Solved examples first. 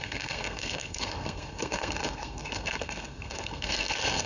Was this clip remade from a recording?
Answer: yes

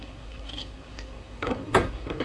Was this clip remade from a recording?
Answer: yes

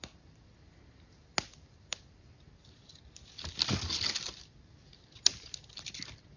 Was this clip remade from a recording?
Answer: no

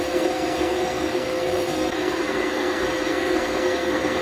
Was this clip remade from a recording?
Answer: yes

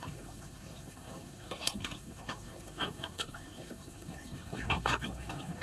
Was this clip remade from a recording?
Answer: yes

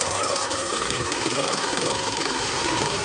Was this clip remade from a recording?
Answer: yes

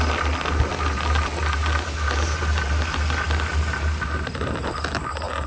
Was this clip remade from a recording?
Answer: no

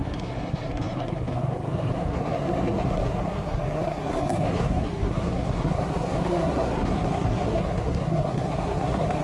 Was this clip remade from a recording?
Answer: yes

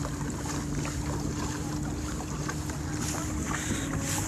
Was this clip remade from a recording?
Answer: no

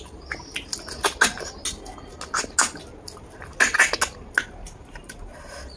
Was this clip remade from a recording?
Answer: no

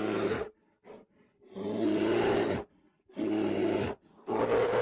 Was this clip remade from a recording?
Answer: no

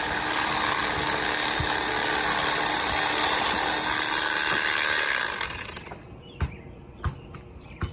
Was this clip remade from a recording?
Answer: no